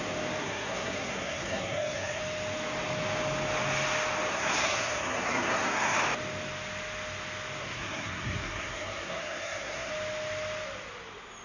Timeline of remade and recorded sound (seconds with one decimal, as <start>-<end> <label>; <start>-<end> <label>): 0.0-0.4 recorded; 0.4-2.2 remade; 2.2-4.3 recorded; 4.3-6.0 remade; 6.0-7.6 recorded; 7.6-9.9 remade; 9.9-11.4 recorded